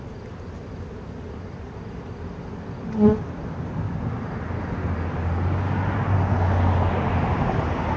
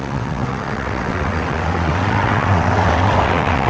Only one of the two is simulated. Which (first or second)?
second